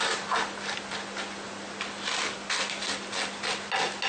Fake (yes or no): no